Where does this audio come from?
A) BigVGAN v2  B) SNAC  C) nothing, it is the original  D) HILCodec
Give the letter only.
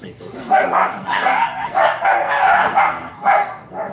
B